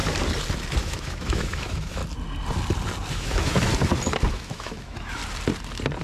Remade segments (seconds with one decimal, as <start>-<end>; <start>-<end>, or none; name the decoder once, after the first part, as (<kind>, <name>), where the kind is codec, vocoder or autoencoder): 0.8-2.0 (autoencoder, DAC-VAE); 3.1-3.7; 4.3-5.2

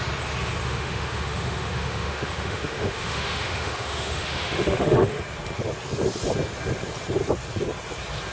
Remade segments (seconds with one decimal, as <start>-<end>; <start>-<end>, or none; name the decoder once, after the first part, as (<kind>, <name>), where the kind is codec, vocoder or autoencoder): 0.6-5.2 (autoencoder, DAC-VAE)

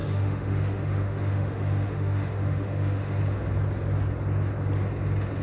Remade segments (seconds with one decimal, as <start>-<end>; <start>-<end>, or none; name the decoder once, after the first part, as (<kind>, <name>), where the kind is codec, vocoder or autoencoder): 0.0-3.2 (autoencoder, DAC-VAE)